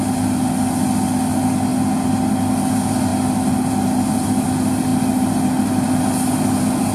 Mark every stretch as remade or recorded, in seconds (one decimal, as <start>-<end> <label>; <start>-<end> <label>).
0.0-6.9 recorded